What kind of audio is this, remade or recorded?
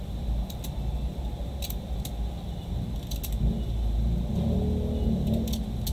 recorded